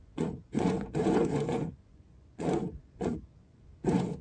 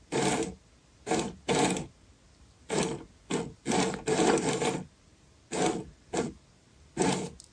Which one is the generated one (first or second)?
first